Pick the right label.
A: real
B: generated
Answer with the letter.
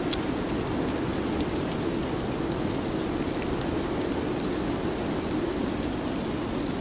A